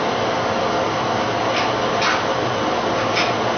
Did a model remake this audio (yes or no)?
no